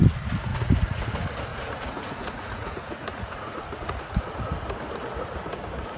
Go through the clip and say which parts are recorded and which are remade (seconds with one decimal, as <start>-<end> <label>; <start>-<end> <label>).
0.0-0.5 recorded; 0.5-1.1 remade; 1.1-1.5 recorded; 1.5-4.2 remade; 4.2-6.0 recorded